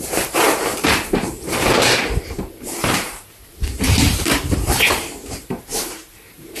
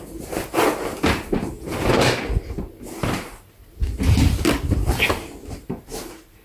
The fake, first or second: first